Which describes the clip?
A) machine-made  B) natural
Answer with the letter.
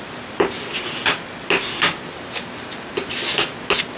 B